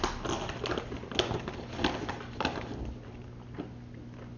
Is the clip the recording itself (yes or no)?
yes